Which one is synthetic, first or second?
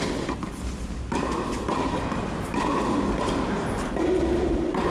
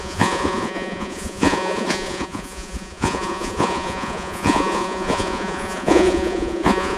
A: second